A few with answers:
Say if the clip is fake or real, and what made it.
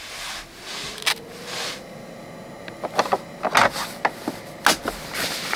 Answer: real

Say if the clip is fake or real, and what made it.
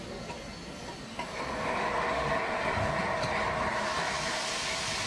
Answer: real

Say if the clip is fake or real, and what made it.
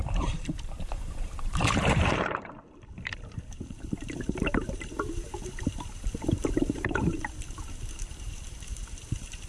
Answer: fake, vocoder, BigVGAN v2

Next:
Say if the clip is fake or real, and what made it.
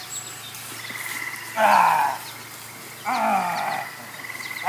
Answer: real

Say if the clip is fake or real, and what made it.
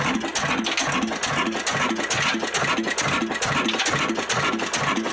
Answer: real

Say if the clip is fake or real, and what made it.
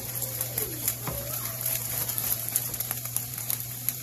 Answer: fake, vocoder, BigVGAN v2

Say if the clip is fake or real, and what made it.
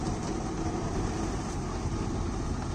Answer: fake, vocoder, BigVGAN v2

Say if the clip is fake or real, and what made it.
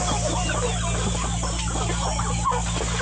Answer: real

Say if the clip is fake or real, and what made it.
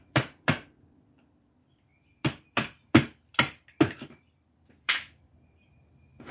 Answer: fake, vocoder, BigVGAN v2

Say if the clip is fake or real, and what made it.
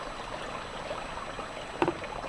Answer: real